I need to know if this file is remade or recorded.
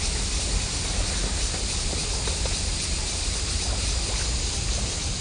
recorded